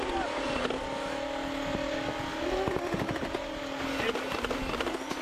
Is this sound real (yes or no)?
yes